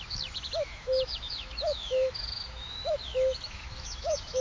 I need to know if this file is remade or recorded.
remade